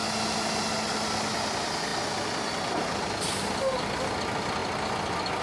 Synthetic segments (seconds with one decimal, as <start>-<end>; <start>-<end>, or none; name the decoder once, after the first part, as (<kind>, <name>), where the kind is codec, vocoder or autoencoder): none